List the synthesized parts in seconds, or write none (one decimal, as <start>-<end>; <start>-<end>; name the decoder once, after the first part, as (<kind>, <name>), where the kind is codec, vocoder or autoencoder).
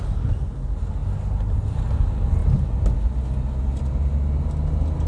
none